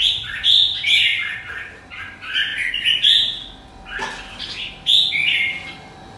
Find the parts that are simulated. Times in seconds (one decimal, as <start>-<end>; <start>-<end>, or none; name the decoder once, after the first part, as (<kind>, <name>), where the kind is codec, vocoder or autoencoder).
0.0-1.1 (vocoder, BigVGAN v2); 2.0-2.5; 5.1-6.2